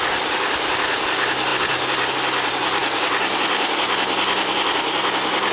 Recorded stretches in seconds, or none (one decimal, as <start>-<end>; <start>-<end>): 0.0-5.5